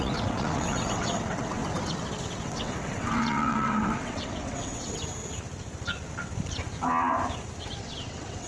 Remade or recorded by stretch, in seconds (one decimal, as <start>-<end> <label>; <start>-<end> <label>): 0.0-1.6 remade; 1.6-2.2 recorded; 2.2-5.0 remade; 5.0-7.8 recorded; 7.8-8.5 remade